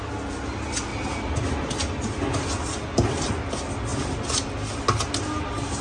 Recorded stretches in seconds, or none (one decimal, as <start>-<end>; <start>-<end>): 0.0-5.8